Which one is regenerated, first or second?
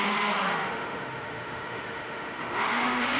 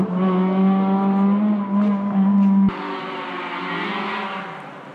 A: first